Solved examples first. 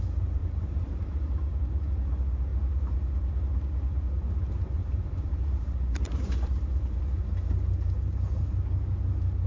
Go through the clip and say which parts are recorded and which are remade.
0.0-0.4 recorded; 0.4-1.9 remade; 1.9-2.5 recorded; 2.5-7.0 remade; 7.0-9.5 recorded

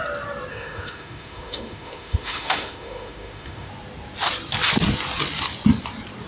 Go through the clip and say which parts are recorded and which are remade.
0.0-0.5 recorded; 0.5-3.7 remade; 3.7-6.3 recorded

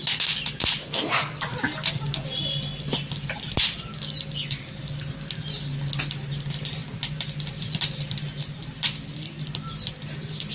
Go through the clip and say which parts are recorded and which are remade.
0.0-0.8 recorded; 0.8-1.4 remade; 1.4-10.5 recorded

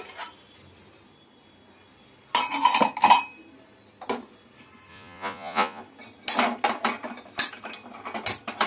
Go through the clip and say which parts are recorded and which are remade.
0.0-4.9 recorded; 4.9-5.8 remade; 5.8-8.7 recorded

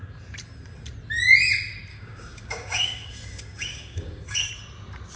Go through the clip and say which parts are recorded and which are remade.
0.0-1.9 recorded; 1.9-4.5 remade; 4.5-5.2 recorded

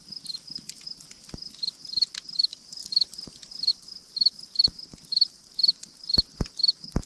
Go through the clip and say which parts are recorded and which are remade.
0.0-7.1 recorded

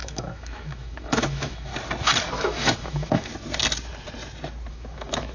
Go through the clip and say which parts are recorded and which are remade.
0.0-1.7 remade; 1.7-2.3 recorded; 2.3-3.3 remade; 3.3-4.7 recorded; 4.7-5.3 remade